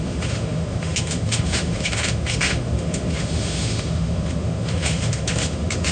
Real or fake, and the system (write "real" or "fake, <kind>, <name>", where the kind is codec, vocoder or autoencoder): fake, autoencoder, DAC-VAE